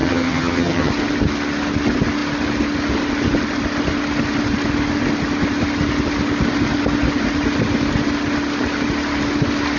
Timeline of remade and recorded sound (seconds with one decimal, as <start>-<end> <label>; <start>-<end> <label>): 0.0-0.9 remade; 0.9-9.8 recorded